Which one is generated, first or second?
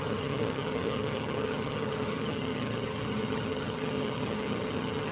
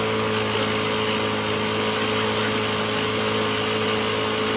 first